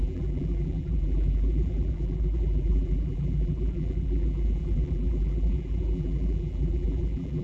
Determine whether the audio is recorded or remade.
remade